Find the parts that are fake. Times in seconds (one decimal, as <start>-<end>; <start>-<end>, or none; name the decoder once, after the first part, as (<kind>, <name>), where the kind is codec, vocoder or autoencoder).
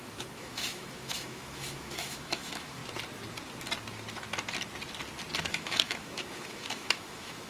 0.0-2.8 (autoencoder, DAC-VAE); 5.4-7.5